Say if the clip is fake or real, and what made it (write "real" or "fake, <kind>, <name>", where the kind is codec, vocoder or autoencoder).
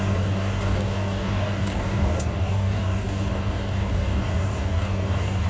fake, codec, DAC